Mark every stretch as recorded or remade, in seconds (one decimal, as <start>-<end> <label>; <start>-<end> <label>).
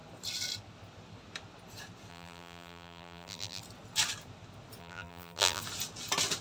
0.0-2.1 recorded; 2.1-3.6 remade; 3.6-4.8 recorded; 4.8-5.6 remade; 5.6-6.4 recorded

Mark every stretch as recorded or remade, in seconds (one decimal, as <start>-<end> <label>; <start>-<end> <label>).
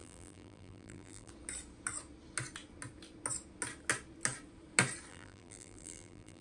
0.0-1.3 remade; 1.3-5.1 recorded; 5.1-6.4 remade